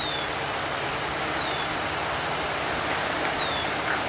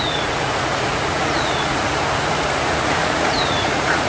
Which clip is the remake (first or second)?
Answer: second